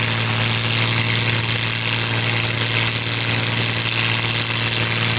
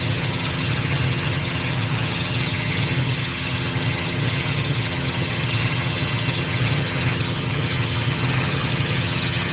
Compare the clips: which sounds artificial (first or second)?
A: second